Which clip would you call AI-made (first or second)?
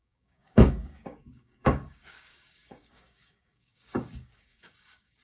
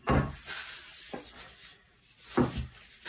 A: first